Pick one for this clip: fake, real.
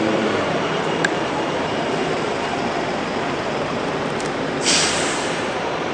fake